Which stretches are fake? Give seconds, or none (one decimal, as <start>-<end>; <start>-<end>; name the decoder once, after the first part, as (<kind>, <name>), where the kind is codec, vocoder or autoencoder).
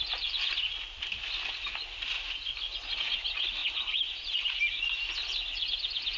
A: 3.6-4.6 (vocoder, BigVGAN v2)